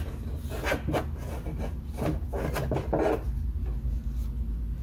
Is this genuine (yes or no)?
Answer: yes